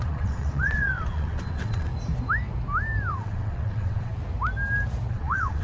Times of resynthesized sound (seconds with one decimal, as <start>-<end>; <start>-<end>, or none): 0.0-1.9; 3.1-4.1; 5.1-5.6